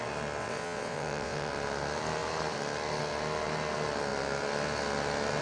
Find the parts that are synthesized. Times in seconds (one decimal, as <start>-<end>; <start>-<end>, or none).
0.4-1.5